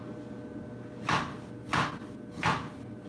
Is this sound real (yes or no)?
yes